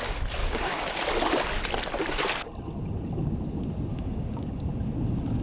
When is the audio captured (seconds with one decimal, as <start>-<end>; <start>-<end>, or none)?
0.0-0.4; 1.0-3.9; 4.7-5.4